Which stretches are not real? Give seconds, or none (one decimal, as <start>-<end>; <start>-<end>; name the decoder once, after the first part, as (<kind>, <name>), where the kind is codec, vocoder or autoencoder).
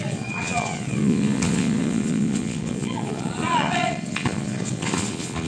0.0-5.5 (vocoder, Vocos)